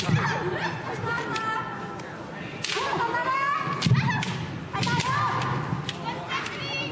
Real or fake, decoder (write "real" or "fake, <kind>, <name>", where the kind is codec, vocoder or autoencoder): real